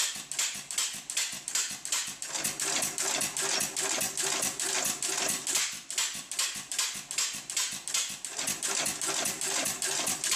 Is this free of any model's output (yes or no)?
yes